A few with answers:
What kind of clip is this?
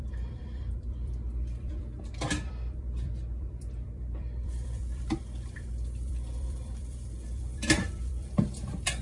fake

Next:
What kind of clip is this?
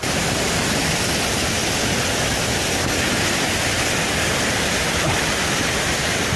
real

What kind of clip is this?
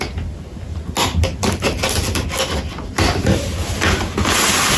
real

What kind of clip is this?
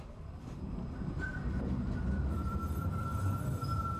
fake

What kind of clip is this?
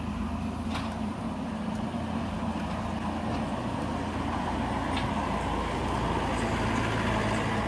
real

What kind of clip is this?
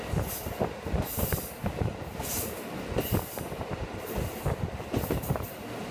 real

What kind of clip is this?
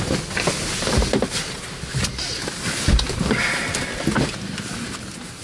real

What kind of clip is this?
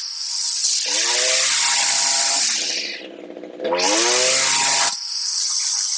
real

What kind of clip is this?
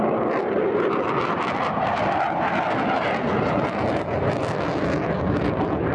real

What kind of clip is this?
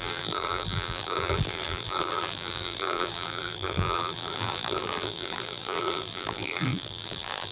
fake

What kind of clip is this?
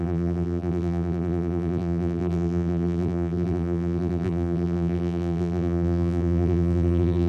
fake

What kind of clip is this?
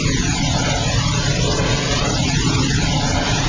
fake